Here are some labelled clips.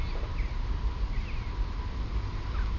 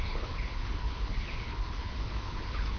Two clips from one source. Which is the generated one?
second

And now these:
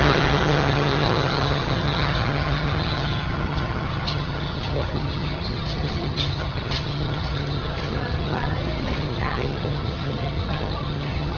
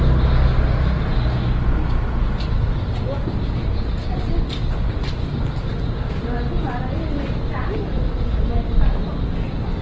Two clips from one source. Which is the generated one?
first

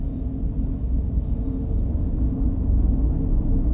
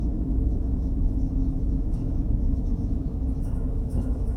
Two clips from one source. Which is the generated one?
second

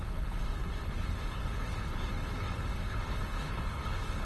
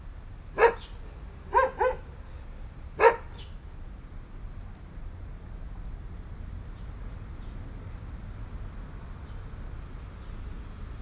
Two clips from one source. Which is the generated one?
first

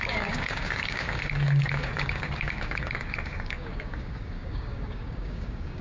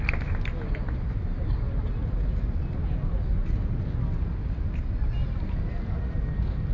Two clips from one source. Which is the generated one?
first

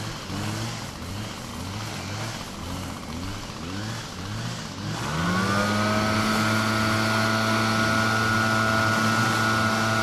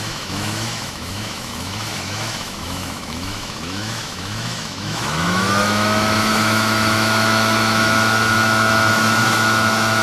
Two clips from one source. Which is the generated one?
second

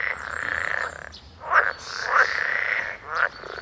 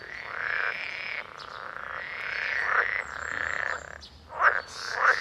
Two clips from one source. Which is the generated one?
first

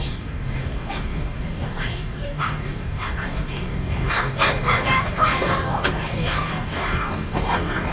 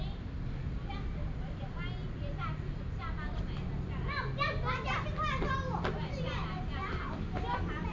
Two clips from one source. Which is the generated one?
first